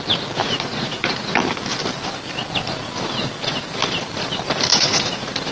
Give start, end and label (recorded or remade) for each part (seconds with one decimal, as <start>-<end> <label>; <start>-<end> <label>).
0.0-0.4 recorded; 0.4-1.3 remade; 1.3-4.7 recorded; 4.7-5.5 remade

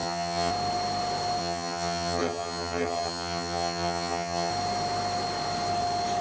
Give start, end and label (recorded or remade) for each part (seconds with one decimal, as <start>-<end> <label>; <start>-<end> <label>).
0.0-0.5 remade; 0.5-1.4 recorded; 1.4-4.5 remade; 4.5-6.2 recorded

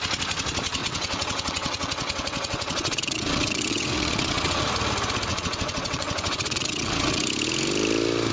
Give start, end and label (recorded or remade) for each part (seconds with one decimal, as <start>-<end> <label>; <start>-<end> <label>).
0.0-0.8 recorded; 0.8-4.6 remade; 4.6-5.3 recorded; 5.3-7.2 remade; 7.2-8.3 recorded